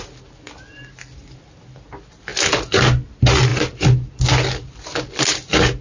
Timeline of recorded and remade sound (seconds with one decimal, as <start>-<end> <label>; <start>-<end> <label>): 0.0-5.8 recorded